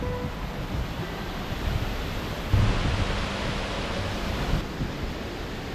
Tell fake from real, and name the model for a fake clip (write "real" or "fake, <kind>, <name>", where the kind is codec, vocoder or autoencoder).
real